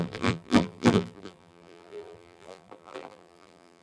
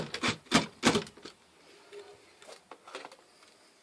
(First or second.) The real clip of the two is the second